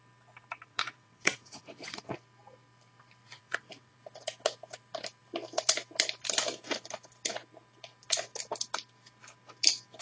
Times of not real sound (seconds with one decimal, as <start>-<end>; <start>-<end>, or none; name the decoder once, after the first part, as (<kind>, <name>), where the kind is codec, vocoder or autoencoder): 0.6-2.1 (vocoder, WaveNeXt); 3.3-4.0